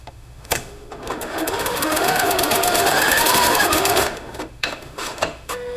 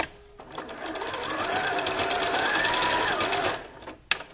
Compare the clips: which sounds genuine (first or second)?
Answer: second